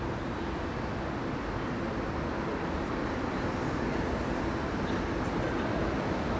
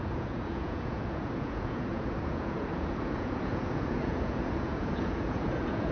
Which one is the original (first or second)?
first